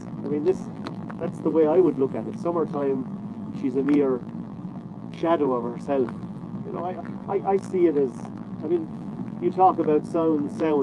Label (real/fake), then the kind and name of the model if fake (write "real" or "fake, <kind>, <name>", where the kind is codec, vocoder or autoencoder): fake, vocoder, BigVGAN v2